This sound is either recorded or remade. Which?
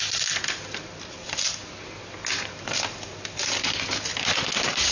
recorded